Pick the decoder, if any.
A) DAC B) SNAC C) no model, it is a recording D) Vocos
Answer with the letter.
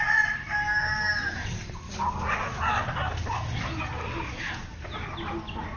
C